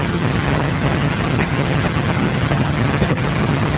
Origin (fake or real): fake